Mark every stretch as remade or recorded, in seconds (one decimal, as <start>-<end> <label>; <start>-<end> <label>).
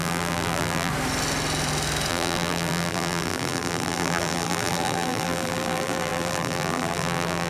0.0-0.9 remade; 0.9-2.1 recorded; 2.1-7.5 remade